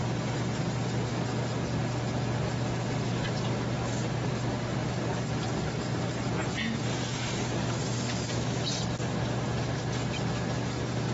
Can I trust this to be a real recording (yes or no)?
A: yes